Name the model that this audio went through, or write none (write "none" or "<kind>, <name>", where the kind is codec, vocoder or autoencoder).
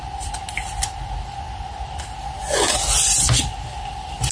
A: none